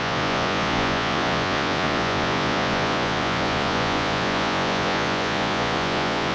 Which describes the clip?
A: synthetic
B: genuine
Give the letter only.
A